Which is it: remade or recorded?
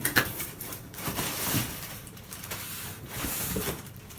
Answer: remade